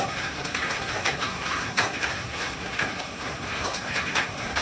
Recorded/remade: remade